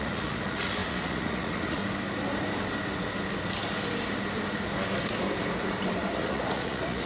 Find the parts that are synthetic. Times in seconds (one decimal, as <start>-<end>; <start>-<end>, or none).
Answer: 0.0-1.8; 6.0-7.1